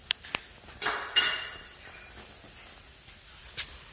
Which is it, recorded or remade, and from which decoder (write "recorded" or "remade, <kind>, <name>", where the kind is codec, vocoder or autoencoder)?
recorded